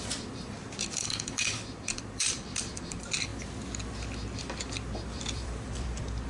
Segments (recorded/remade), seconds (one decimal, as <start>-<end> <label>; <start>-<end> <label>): 0.0-3.3 remade; 3.3-4.4 recorded; 4.4-6.3 remade